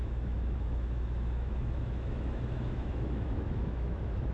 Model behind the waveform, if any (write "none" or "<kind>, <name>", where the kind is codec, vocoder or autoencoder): autoencoder, DAC-VAE